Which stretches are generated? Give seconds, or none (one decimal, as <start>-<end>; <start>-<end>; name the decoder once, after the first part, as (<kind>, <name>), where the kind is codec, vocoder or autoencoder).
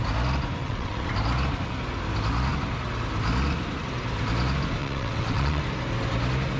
0.6-1.1 (vocoder, WaveNeXt); 4.8-5.6